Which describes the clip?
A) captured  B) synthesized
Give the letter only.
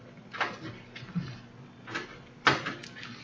A